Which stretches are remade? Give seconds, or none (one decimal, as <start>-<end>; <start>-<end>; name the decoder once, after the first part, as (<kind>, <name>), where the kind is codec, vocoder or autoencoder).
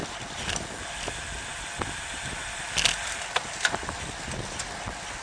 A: none